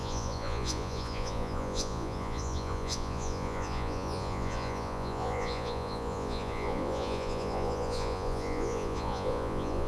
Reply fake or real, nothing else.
fake